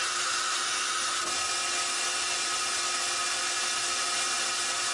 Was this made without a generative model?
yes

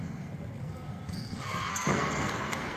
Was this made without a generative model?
no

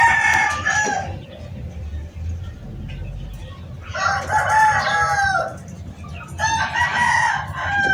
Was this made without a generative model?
yes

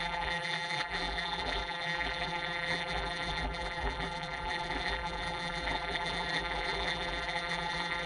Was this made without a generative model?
no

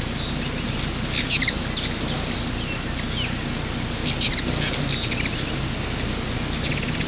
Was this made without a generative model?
yes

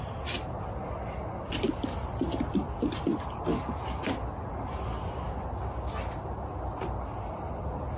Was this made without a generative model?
yes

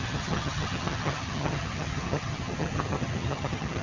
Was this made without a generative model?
no